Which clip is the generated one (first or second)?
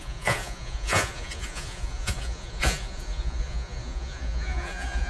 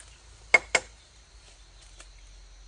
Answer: first